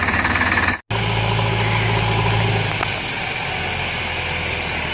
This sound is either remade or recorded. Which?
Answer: recorded